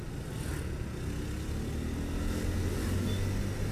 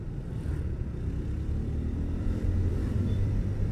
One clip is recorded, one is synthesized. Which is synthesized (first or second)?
second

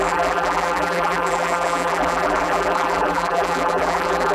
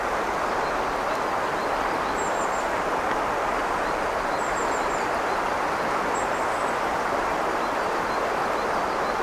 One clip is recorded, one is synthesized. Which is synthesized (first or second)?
first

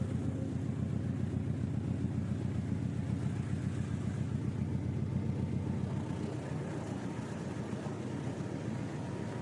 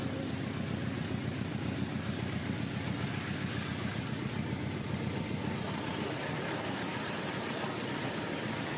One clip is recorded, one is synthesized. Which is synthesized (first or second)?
second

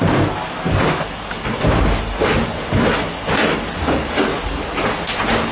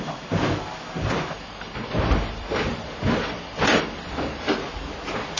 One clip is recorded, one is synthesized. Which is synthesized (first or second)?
second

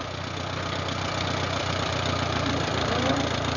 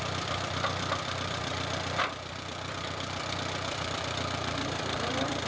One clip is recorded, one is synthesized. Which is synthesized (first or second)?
second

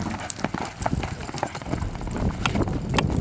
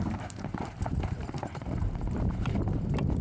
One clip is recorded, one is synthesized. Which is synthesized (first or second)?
second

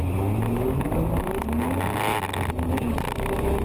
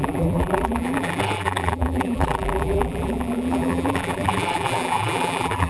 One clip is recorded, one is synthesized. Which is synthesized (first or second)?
second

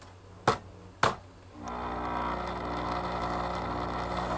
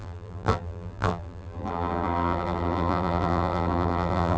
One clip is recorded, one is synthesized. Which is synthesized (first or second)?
second